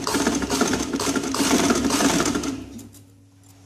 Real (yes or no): yes